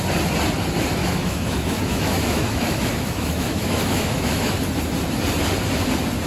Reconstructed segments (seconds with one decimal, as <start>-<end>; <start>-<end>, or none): 1.0-4.5